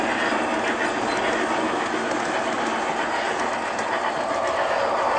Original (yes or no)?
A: yes